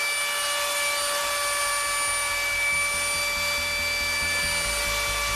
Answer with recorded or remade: recorded